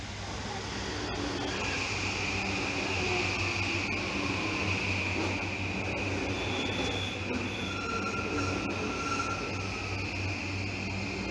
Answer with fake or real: real